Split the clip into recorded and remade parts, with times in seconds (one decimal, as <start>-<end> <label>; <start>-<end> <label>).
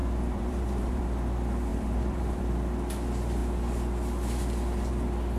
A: 0.0-1.0 remade; 1.0-1.7 recorded; 1.7-2.4 remade; 2.4-5.4 recorded